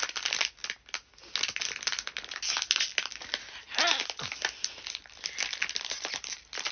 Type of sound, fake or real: real